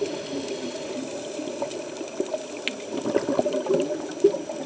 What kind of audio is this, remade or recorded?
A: recorded